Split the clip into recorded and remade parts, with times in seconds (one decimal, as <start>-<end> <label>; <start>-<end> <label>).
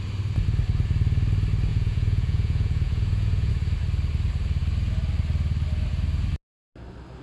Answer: 0.0-1.7 recorded; 1.7-3.5 remade; 3.5-7.2 recorded